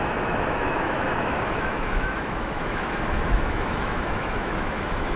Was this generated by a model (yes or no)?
yes